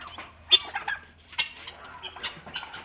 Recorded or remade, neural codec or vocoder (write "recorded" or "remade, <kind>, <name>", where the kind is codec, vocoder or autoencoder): recorded